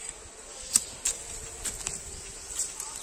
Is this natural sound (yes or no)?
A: no